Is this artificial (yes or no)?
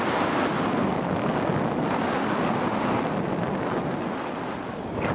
no